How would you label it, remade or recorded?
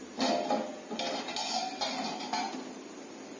recorded